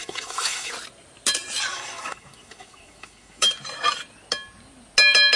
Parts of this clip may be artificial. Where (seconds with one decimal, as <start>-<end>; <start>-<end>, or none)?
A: 0.0-0.7; 1.7-3.5